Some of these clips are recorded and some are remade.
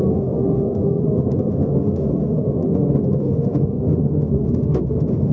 remade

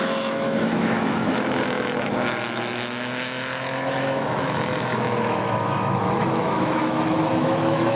remade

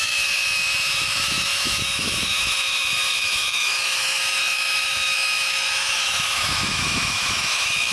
remade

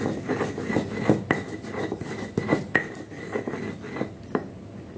recorded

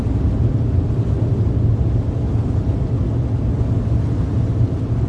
recorded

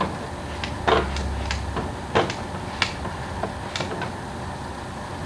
recorded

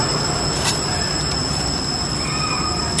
recorded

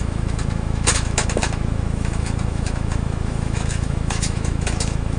remade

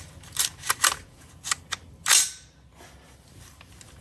recorded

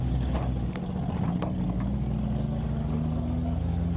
recorded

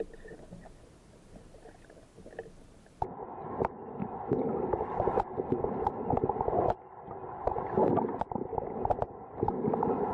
recorded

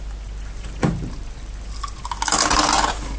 recorded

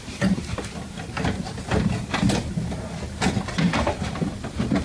recorded